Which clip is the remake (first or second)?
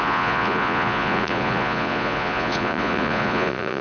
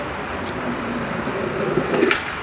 first